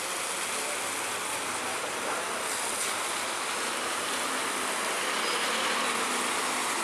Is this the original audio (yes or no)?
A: yes